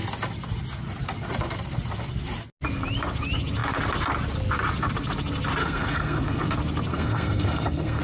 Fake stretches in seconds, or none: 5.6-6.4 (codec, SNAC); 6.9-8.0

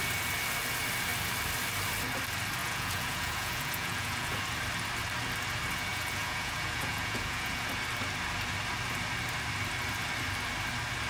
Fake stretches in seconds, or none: 2.6-4.4 (vocoder, Vocos); 5.9-7.7

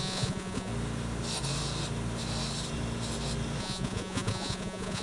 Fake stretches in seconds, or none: 0.0-0.7 (vocoder, Vocos); 3.6-5.0

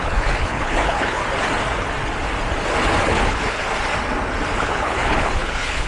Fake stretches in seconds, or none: 0.0-1.2 (codec, HILCodec); 3.1-3.6; 4.6-5.9

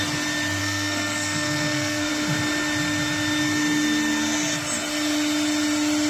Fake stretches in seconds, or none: 0.6-2.1 (codec, SNAC)

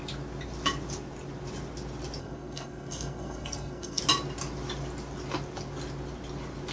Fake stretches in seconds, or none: 2.2-4.0 (codec, SNAC)

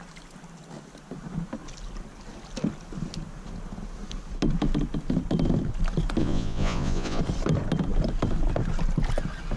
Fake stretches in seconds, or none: 6.2-7.2 (vocoder, Vocos)

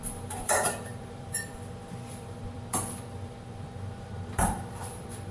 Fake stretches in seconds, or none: 0.0-5.3 (vocoder, BigVGAN v2)